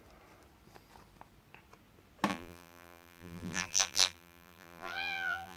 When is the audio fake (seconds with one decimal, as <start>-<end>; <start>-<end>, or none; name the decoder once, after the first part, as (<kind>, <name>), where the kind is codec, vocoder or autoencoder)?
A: 2.3-5.6 (vocoder, BigVGAN v2)